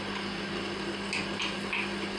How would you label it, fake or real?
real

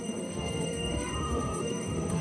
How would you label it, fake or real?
fake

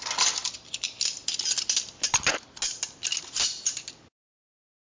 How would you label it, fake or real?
real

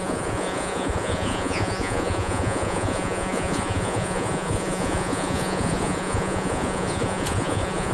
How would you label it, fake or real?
fake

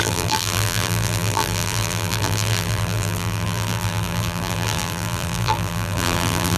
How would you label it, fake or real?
fake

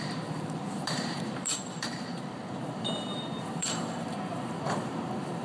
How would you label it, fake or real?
fake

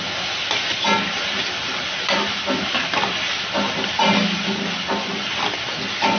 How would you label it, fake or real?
real